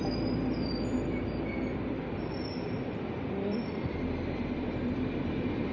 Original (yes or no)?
no